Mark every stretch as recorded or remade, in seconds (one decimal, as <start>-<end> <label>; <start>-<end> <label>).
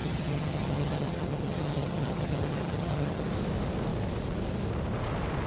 0.0-3.3 remade; 3.3-5.5 recorded